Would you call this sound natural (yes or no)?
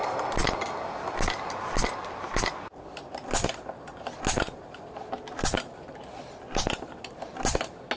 yes